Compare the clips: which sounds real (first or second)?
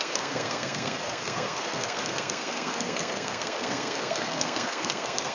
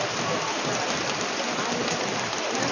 second